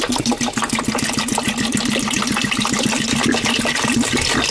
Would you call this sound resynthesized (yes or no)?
no